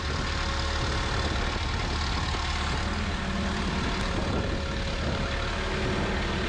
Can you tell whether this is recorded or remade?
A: recorded